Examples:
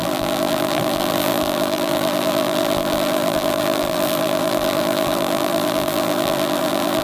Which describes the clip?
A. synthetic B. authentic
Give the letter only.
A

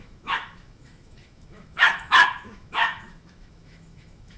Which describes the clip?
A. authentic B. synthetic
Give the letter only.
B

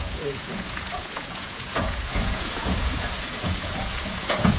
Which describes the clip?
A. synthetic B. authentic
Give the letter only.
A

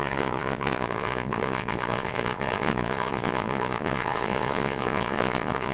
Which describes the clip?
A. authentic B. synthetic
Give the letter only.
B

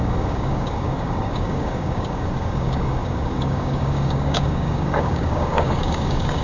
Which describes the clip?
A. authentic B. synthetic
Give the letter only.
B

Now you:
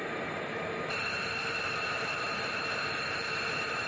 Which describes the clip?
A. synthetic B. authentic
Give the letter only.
A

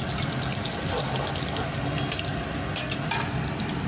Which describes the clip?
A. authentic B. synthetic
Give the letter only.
A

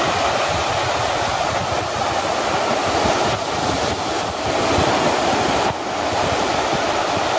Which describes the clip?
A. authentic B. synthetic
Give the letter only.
A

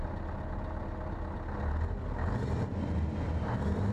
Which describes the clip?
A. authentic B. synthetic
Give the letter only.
A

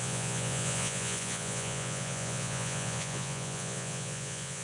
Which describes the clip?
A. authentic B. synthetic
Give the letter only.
B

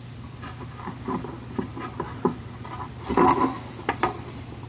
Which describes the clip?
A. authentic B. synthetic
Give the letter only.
A